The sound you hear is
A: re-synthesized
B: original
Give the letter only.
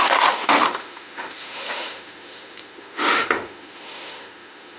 A